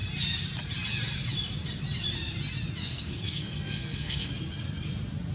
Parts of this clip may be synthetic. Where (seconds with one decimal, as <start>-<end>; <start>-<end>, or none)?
2.8-4.3